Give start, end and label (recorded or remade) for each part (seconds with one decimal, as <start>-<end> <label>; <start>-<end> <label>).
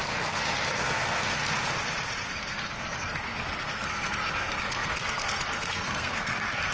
0.0-1.4 remade; 1.4-2.3 recorded; 2.3-6.7 remade